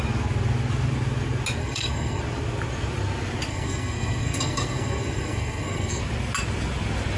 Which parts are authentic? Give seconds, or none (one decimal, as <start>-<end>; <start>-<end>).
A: 0.0-1.6; 2.2-3.5; 6.0-7.2